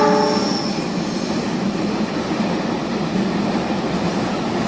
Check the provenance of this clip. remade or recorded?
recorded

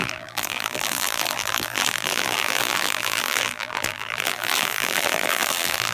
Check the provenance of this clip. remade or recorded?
remade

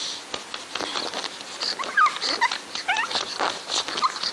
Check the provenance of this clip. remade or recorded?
recorded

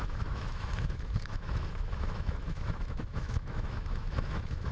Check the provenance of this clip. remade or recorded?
remade